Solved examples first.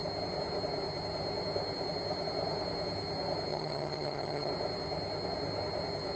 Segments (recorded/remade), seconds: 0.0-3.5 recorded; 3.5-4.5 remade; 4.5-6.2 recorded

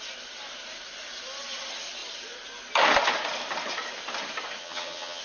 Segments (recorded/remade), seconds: 0.0-4.6 recorded; 4.6-5.2 remade

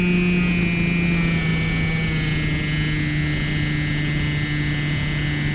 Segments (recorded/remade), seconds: 0.0-5.5 recorded

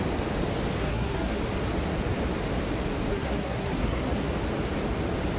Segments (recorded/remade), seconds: 0.0-0.8 recorded; 0.8-1.4 remade; 1.4-3.1 recorded; 3.1-4.3 remade; 4.3-5.4 recorded

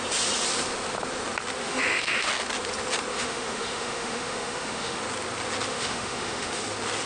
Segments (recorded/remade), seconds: 0.0-1.6 recorded; 1.6-2.3 remade; 2.3-3.1 recorded; 3.1-5.0 remade; 5.0-5.7 recorded; 5.7-6.6 remade; 6.6-7.1 recorded

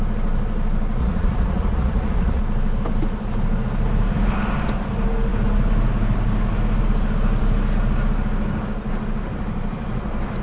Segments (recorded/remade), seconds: 0.0-1.0 recorded; 1.0-2.4 remade; 2.4-10.4 recorded

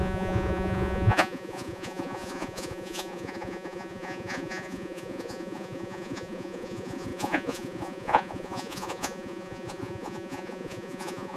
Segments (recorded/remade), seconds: 0.0-11.4 remade